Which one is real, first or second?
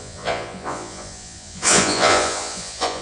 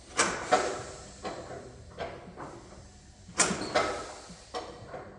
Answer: second